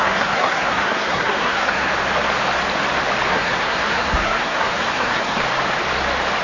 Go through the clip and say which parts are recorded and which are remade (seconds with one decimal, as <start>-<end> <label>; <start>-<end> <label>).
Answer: 0.0-1.9 remade; 1.9-3.3 recorded; 3.3-5.4 remade; 5.4-6.4 recorded